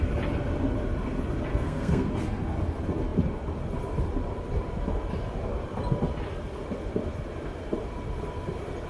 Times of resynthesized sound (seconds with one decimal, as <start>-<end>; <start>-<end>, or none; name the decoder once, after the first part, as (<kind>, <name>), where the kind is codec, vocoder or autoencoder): 1.5-2.1 (codec, SNAC)